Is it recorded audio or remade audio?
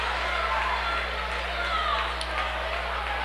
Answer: recorded